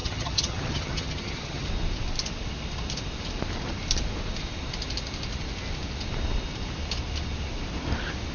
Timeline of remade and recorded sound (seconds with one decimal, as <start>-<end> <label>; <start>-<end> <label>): 0.0-1.7 remade; 1.7-8.3 recorded